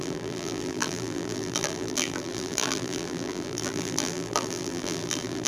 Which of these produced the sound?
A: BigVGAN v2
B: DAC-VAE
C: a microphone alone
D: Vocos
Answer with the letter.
A